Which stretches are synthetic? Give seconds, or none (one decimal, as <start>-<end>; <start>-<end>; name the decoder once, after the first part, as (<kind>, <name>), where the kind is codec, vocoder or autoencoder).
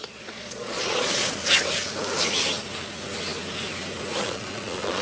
0.0-1.4 (vocoder, Vocos); 4.2-5.0